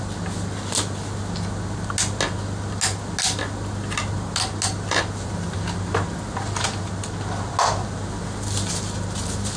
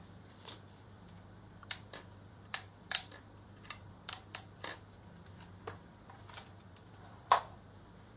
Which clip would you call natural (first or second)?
first